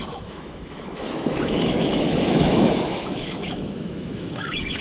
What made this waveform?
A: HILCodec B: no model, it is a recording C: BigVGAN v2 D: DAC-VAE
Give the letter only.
D